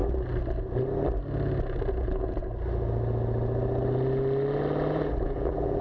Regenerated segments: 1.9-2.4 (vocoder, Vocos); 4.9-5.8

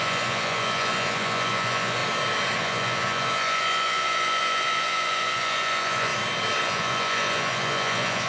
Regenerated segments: 0.0-2.0 (vocoder, Vocos); 2.6-6.1; 6.6-8.3

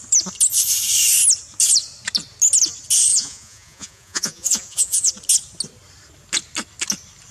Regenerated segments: 3.1-5.1 (vocoder, Vocos)